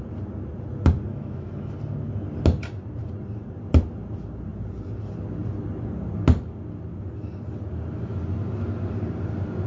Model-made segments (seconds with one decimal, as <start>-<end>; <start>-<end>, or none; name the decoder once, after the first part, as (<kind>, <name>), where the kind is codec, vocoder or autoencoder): 1.1-1.7 (autoencoder, DAC-VAE)